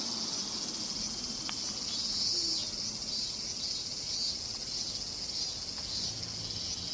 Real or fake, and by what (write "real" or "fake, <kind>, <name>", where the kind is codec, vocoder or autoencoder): real